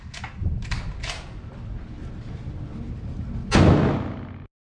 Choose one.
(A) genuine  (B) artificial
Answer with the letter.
A